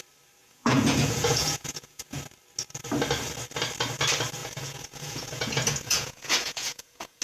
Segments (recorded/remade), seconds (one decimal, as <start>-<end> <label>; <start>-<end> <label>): 0.0-0.4 recorded; 0.4-2.2 remade; 2.2-4.4 recorded; 4.4-7.2 remade